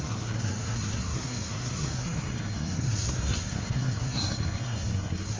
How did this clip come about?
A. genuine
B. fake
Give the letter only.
B